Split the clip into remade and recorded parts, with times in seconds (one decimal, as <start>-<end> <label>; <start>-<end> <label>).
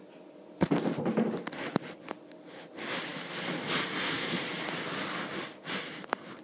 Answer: 0.0-6.4 recorded